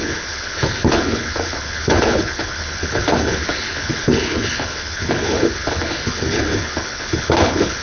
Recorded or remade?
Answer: remade